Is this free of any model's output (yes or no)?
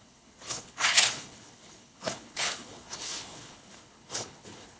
no